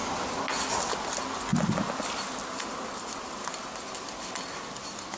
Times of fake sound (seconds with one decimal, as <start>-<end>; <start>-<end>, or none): none